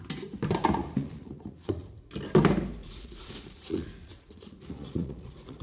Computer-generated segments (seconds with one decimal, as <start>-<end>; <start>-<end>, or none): 0.8-2.1; 2.8-5.6